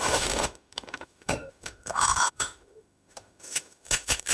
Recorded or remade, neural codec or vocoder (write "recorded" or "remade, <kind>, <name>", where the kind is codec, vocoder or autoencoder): remade, autoencoder, DAC-VAE